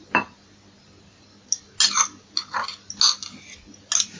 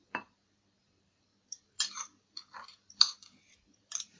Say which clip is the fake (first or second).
second